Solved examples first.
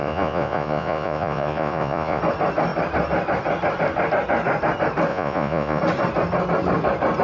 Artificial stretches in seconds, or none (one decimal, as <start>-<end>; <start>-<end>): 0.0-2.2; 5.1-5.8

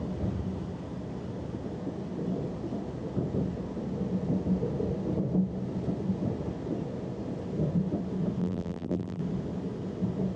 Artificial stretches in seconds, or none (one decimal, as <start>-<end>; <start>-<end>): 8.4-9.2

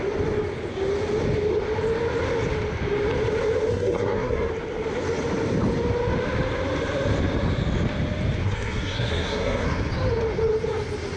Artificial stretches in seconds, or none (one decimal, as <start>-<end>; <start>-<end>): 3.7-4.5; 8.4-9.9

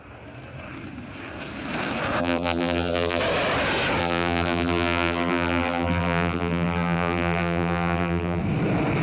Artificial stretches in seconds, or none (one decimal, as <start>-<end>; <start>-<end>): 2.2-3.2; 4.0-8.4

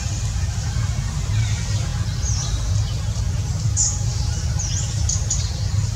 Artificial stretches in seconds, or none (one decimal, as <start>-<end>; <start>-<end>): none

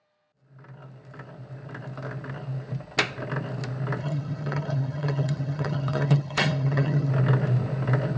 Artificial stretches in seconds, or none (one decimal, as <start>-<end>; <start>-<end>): 4.0-7.1

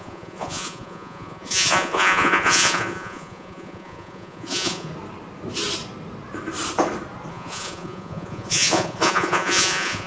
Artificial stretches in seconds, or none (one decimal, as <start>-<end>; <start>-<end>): 0.0-4.9; 7.3-10.1

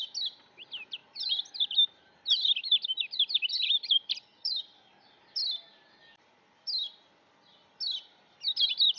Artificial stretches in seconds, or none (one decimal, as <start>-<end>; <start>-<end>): 1.0-4.6